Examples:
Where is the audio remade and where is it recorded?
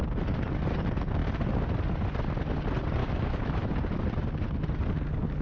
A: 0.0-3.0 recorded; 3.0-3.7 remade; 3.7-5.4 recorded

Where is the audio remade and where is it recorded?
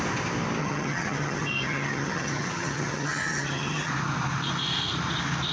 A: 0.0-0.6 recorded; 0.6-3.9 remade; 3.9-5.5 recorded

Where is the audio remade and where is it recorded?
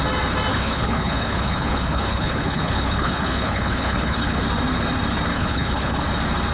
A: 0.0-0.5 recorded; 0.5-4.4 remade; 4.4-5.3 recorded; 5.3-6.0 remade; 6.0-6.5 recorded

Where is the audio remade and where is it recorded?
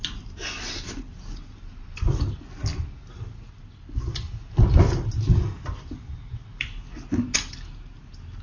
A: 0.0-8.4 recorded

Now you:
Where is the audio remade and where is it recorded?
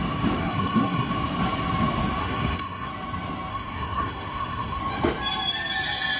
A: 0.0-0.4 recorded; 0.4-1.1 remade; 1.1-2.2 recorded; 2.2-2.9 remade; 2.9-3.5 recorded; 3.5-4.8 remade; 4.8-6.2 recorded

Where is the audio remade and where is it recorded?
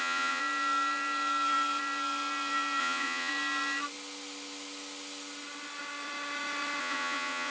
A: 0.0-0.4 remade; 0.4-2.8 recorded; 2.8-3.3 remade; 3.3-6.8 recorded; 6.8-7.5 remade